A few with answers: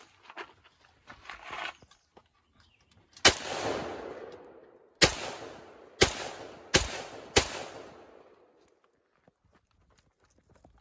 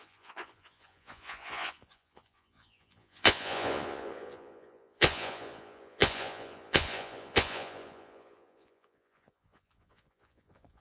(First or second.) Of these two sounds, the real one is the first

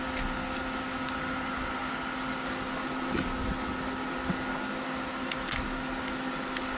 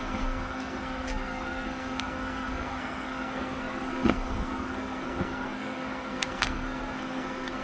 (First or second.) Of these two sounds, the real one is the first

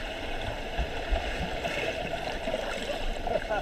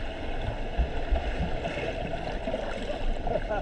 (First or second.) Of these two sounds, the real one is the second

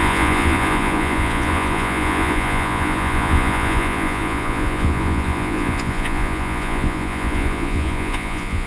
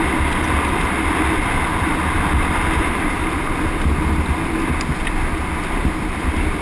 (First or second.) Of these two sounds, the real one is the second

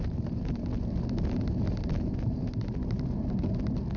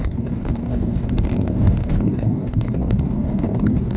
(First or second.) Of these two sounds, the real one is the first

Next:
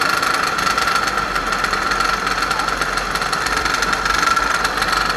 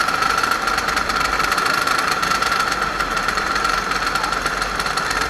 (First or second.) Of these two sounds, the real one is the first